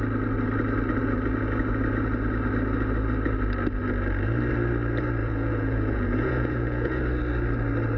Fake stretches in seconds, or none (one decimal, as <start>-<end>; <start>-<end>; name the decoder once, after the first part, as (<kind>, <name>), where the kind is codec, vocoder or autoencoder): 5.2-7.0 (vocoder, Vocos)